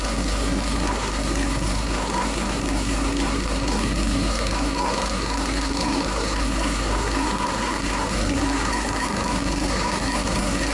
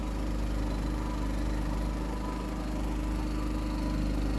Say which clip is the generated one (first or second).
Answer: first